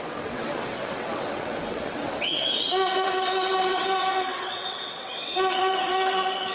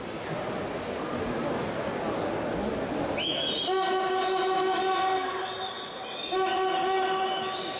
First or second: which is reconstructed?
first